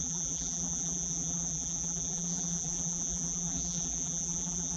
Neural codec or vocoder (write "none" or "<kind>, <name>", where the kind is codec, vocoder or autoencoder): vocoder, BigVGAN v2